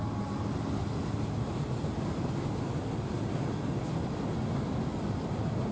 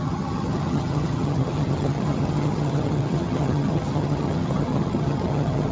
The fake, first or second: second